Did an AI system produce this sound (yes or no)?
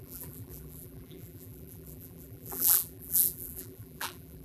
yes